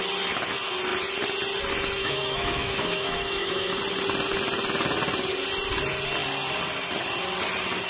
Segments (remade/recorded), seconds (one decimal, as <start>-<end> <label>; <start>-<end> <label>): 0.0-2.0 recorded; 2.0-3.8 remade; 3.8-7.9 recorded